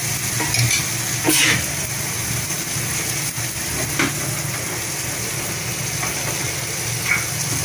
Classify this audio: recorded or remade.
recorded